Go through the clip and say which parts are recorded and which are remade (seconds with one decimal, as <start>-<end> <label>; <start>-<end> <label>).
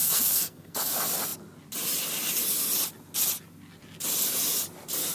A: 0.0-0.9 remade; 0.9-5.1 recorded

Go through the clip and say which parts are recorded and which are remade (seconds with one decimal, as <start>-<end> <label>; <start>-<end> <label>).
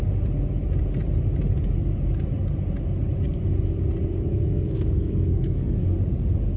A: 0.0-4.3 recorded; 4.3-6.0 remade; 6.0-6.6 recorded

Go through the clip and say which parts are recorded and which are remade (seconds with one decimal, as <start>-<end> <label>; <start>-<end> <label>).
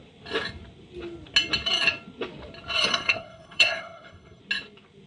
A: 0.0-2.9 recorded; 2.9-4.4 remade; 4.4-5.1 recorded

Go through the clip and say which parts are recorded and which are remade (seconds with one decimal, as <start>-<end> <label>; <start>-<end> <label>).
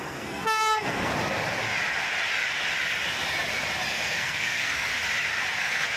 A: 0.0-1.1 remade; 1.1-3.9 recorded; 3.9-4.9 remade; 4.9-5.6 recorded; 5.6-6.0 remade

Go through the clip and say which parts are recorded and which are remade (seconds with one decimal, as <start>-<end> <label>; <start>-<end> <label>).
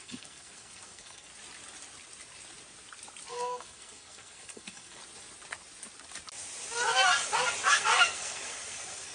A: 0.0-1.3 remade; 1.3-3.3 recorded; 3.3-5.0 remade; 5.0-7.7 recorded; 7.7-9.1 remade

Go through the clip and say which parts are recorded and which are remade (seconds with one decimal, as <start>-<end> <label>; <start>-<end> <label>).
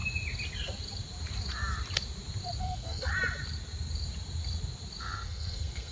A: 0.0-2.6 recorded; 2.6-3.1 remade; 3.1-5.0 recorded; 5.0-5.9 remade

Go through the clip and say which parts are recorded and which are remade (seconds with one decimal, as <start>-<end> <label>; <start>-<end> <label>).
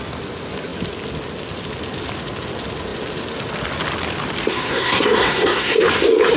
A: 0.0-4.5 recorded; 4.5-5.8 remade; 5.8-6.4 recorded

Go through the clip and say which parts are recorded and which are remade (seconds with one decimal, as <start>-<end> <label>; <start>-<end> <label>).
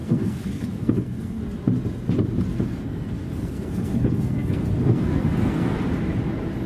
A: 0.0-1.4 remade; 1.4-2.5 recorded; 2.5-5.8 remade; 5.8-6.7 recorded